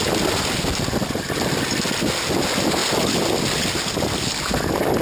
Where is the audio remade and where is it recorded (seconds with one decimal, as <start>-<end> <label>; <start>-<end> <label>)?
0.0-5.0 recorded